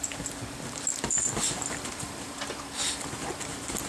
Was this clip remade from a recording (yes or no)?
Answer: no